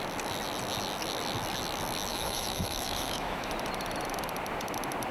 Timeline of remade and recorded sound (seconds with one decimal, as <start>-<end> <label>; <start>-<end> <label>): 0.0-2.1 recorded; 2.1-3.5 remade; 3.5-5.1 recorded